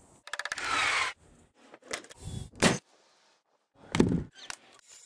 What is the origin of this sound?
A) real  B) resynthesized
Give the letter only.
A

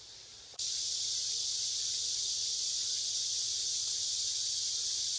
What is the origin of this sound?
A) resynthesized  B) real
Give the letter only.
A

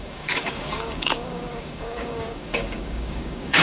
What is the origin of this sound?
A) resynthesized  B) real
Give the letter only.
A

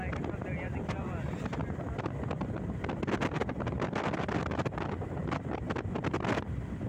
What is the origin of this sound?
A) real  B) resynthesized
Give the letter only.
A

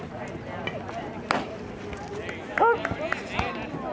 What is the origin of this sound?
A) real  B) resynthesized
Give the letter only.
A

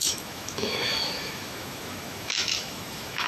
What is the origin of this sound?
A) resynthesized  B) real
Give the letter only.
A